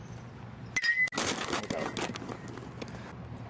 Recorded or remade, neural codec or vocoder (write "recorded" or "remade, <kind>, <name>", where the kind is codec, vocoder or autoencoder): recorded